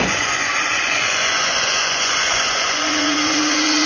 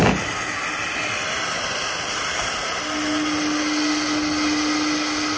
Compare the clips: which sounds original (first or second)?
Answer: second